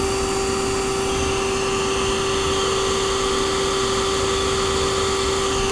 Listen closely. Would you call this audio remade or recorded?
recorded